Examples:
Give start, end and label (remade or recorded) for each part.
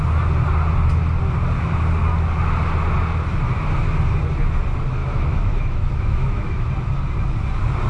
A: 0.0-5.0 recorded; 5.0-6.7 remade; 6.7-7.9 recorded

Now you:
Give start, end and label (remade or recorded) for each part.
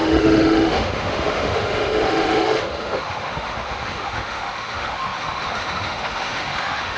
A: 0.0-7.0 remade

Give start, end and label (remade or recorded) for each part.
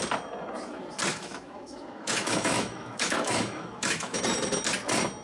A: 0.0-1.1 recorded; 1.1-4.2 remade; 4.2-5.2 recorded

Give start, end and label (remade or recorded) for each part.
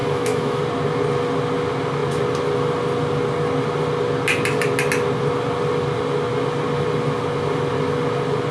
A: 0.0-0.6 remade; 0.6-8.5 recorded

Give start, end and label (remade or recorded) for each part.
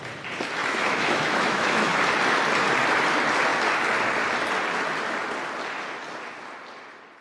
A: 0.0-0.6 recorded; 0.6-2.0 remade; 2.0-7.2 recorded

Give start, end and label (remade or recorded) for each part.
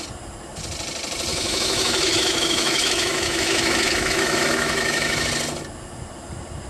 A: 0.0-1.3 recorded; 1.3-5.3 remade; 5.3-6.7 recorded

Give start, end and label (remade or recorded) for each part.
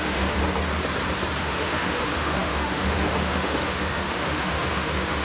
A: 0.0-0.4 remade; 0.4-1.4 recorded; 1.4-5.2 remade